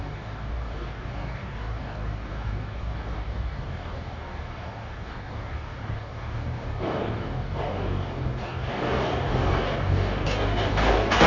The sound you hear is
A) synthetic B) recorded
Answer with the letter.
A